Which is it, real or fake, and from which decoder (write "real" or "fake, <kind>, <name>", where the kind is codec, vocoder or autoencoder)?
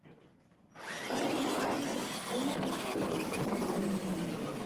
real